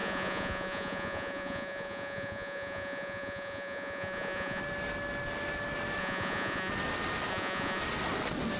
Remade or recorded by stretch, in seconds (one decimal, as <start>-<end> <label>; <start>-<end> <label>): 0.0-4.6 remade; 4.6-6.0 recorded; 6.0-6.7 remade; 6.7-7.3 recorded; 7.3-7.8 remade; 7.8-8.6 recorded